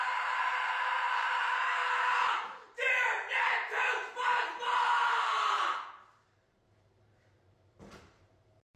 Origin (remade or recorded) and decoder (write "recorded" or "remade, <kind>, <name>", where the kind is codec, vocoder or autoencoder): remade, vocoder, BigVGAN v2